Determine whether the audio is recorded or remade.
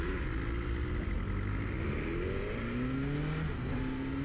recorded